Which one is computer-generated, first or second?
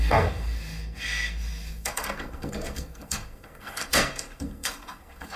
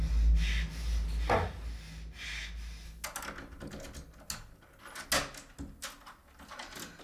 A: first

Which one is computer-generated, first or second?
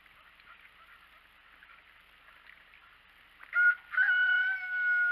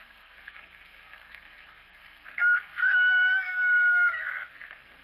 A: second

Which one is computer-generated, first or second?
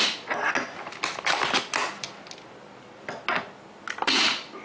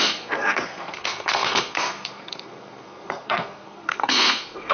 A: second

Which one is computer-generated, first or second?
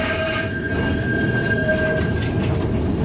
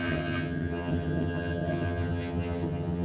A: second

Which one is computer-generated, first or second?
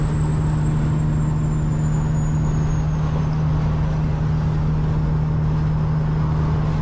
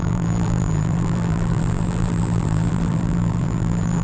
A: second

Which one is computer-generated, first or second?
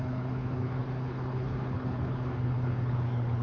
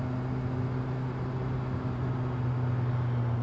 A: first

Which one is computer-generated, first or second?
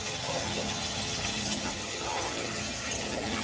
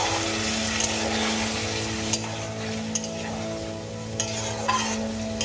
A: first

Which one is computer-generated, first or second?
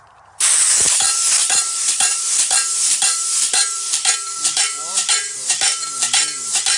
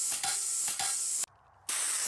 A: first